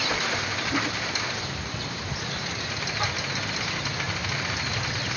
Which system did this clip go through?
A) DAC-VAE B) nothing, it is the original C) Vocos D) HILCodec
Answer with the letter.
B